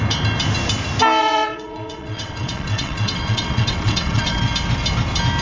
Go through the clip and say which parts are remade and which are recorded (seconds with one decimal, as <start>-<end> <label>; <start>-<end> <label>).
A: 0.0-1.2 recorded; 1.2-4.4 remade; 4.4-5.4 recorded